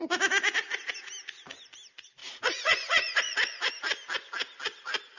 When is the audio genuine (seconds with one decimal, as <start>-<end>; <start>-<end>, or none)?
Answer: 0.0-2.2; 3.7-5.2